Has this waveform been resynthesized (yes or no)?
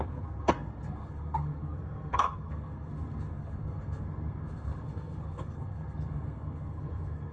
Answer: yes